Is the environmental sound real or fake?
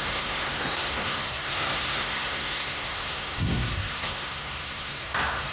fake